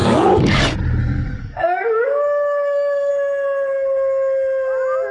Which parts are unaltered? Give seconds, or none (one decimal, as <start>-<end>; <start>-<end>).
0.6-1.0; 3.1-5.1